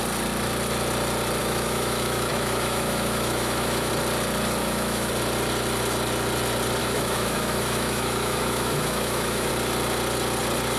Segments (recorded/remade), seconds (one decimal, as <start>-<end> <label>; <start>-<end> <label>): 0.0-1.4 recorded; 1.4-3.9 remade; 3.9-4.6 recorded; 4.6-5.1 remade; 5.1-6.8 recorded; 6.8-9.5 remade; 9.5-10.8 recorded